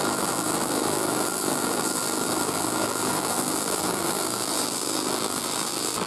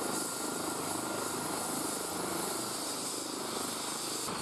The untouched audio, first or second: second